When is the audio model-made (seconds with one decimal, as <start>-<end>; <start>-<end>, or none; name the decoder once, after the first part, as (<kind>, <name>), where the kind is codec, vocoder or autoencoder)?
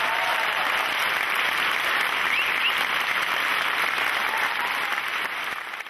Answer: 0.0-1.0 (vocoder, BigVGAN v2); 4.5-5.9